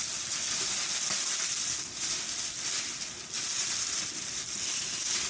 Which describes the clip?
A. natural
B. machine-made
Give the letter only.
A